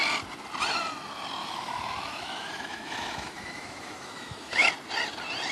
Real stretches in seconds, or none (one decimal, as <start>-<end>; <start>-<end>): 0.0-1.4; 4.7-5.5

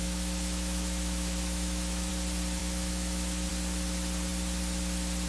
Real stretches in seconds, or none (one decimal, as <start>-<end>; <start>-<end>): 2.1-2.6; 3.5-5.3

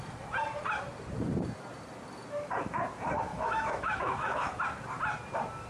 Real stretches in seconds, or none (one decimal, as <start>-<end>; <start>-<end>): 0.0-3.3; 4.6-5.7

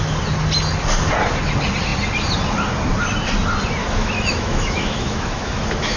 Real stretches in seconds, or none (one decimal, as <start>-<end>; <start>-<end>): 0.0-3.8